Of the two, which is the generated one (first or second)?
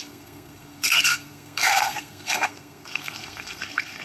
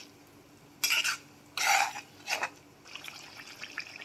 first